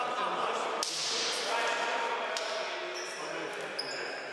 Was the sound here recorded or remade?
recorded